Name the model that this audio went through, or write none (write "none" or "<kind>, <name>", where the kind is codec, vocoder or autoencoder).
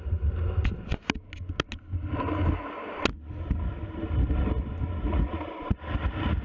none